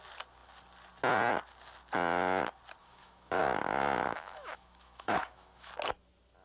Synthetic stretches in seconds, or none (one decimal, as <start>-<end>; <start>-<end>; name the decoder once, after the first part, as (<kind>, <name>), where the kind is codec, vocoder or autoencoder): 2.8-3.4 (autoencoder, DAC-VAE); 4.1-5.7